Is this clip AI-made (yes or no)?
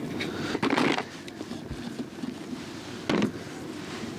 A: no